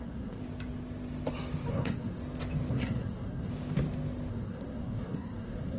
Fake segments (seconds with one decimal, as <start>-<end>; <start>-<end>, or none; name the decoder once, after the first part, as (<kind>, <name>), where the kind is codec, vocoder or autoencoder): 0.0-0.4 (codec, SNAC); 1.7-2.2; 2.7-3.5; 4.3-5.8